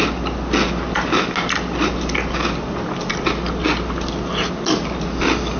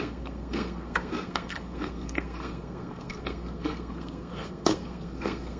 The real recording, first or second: first